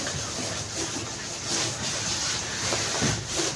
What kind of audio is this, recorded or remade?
remade